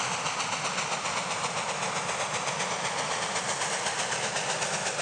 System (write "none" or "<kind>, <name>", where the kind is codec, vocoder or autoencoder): none